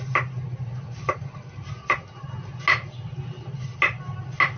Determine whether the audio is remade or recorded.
recorded